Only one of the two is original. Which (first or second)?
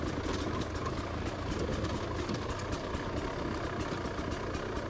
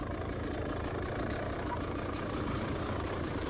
first